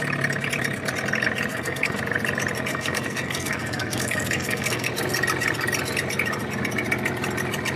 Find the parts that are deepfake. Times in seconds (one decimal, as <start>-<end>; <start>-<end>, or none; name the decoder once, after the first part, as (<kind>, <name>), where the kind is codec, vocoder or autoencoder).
1.5-2.0 (codec, SNAC); 2.7-4.9